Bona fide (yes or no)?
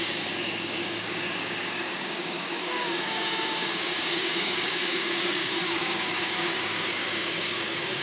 no